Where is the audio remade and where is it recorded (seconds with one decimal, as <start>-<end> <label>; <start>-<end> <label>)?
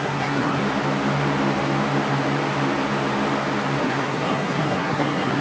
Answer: 0.0-0.6 remade; 0.6-3.8 recorded; 3.8-5.4 remade